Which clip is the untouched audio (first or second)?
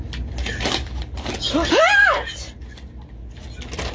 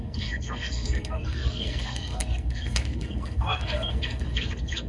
first